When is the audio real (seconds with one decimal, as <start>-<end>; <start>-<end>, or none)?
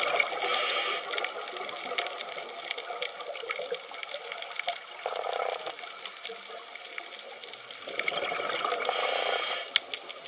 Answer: 0.0-10.3